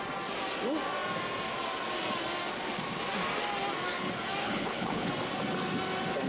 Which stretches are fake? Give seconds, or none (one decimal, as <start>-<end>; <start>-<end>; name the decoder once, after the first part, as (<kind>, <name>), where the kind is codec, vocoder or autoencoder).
4.4-5.1 (codec, HILCodec)